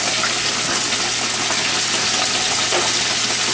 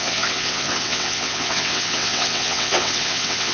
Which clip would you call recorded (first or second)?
first